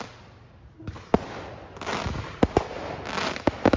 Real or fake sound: real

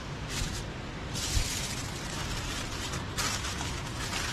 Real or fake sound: fake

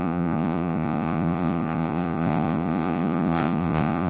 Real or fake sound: fake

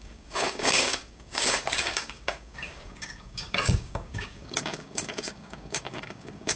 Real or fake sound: fake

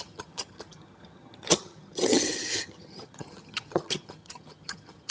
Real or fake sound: fake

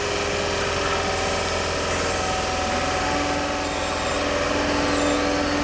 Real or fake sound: real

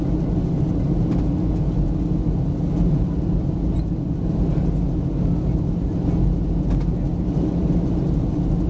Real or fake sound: real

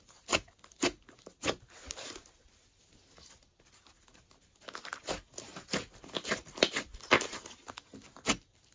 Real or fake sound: real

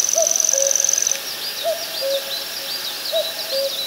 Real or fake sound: real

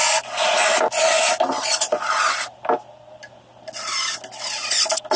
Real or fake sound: real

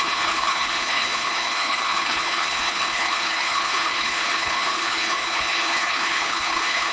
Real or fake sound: fake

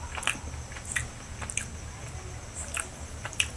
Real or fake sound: real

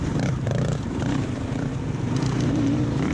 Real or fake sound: fake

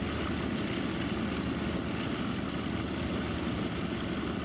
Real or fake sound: real